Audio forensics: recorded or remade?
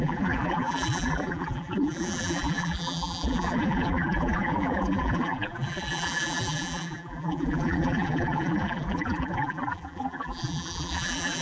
remade